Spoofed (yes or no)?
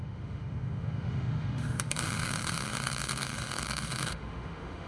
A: yes